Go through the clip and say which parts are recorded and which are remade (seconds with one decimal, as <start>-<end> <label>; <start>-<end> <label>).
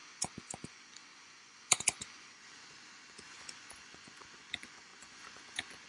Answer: 0.0-5.9 remade